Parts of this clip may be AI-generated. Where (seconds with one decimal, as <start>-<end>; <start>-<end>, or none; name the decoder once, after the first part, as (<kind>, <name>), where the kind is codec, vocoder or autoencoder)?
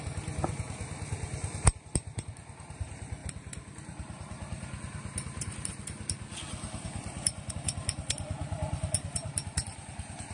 none